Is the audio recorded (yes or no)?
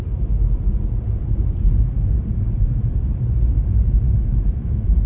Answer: no